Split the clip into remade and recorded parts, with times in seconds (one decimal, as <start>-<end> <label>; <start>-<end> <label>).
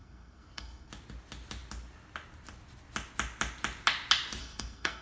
0.0-0.9 remade; 0.9-4.4 recorded; 4.4-5.0 remade